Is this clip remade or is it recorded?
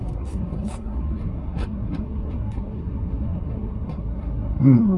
remade